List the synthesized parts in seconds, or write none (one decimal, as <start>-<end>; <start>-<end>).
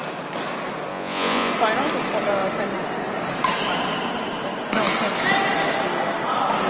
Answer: 0.9-1.5